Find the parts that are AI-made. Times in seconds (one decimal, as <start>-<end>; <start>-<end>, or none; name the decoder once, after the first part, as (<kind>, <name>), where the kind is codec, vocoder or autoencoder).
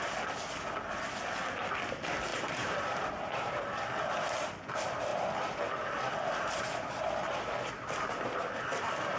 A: 2.3-3.6 (vocoder, BigVGAN v2)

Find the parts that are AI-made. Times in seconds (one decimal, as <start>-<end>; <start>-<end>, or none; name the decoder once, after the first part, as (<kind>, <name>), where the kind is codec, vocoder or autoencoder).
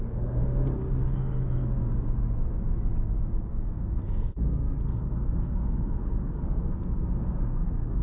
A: 0.0-0.4 (codec, SNAC); 3.5-8.0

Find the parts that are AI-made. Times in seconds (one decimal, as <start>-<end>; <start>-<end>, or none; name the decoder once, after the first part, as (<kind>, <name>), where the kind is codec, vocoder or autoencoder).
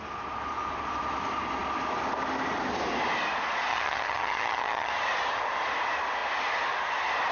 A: 3.7-4.9 (vocoder, HiFi-GAN)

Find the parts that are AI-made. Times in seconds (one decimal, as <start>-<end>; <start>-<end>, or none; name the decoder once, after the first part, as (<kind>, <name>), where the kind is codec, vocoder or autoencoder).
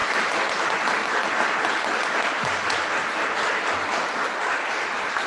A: none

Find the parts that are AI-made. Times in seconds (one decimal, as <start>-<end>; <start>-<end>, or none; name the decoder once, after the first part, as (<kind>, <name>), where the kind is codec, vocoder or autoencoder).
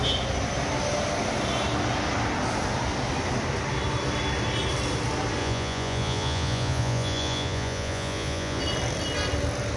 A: 5.4-8.6 (vocoder, Vocos)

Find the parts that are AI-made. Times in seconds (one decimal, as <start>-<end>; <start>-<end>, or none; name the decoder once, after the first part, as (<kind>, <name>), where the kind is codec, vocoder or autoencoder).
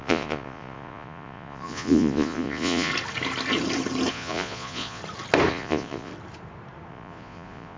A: 0.0-2.9 (vocoder, Vocos); 4.1-5.0; 5.5-6.1; 6.9-7.8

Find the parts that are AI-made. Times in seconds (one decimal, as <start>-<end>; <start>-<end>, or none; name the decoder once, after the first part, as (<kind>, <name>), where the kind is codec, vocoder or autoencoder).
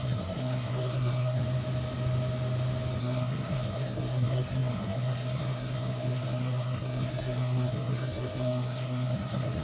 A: 0.0-1.4 (codec, SNAC); 3.0-9.6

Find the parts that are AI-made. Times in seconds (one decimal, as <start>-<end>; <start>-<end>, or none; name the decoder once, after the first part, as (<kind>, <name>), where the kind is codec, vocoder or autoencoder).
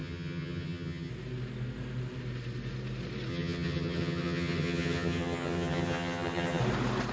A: 0.0-1.1 (vocoder, HiFi-GAN); 3.3-6.6